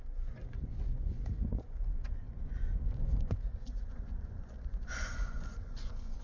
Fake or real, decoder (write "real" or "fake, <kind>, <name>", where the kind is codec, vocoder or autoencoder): fake, vocoder, Vocos